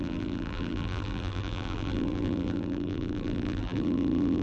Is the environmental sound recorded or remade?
remade